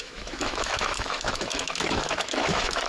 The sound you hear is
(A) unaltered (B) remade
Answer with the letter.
B